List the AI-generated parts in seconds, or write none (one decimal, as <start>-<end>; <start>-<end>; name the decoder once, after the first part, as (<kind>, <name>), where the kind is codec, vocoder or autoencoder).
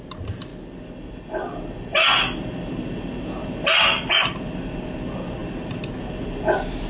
none